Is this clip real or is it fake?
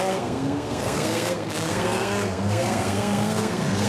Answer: fake